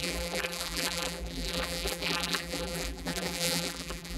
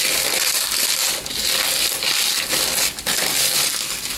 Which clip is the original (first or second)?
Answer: second